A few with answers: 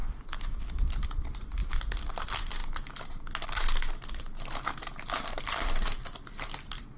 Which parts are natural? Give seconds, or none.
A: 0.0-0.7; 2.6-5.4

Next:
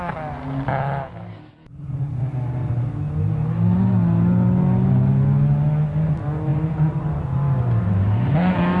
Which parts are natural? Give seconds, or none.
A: 0.0-1.5; 2.2-6.5; 7.2-8.8

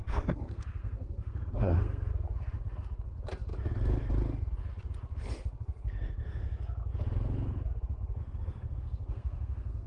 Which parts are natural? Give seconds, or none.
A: 2.1-8.2

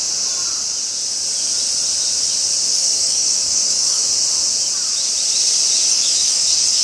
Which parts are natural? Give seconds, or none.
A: 0.0-2.7; 4.0-5.9

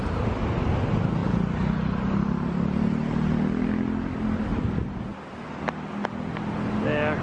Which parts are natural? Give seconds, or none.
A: 0.0-7.2

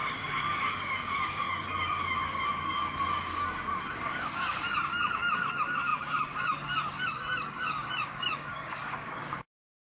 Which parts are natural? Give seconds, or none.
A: none

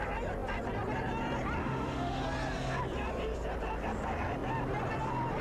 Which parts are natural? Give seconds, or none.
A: 0.0-1.6; 2.2-5.4